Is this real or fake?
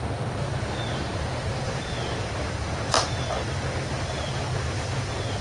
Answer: real